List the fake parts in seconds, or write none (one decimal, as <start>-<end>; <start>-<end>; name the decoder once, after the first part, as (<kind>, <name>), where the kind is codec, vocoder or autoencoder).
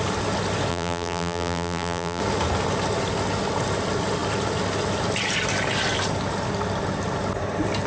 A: 0.7-2.2 (vocoder, BigVGAN v2)